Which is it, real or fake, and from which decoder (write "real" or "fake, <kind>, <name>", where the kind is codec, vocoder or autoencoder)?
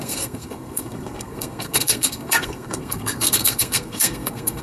fake, codec, SNAC